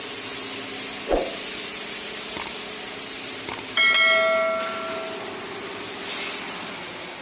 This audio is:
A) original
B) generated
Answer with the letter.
A